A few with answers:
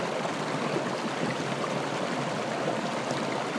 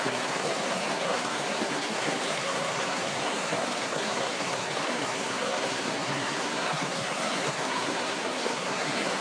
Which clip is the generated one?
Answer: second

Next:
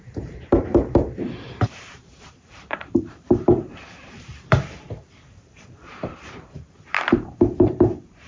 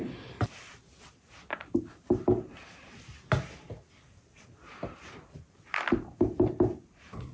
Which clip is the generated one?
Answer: first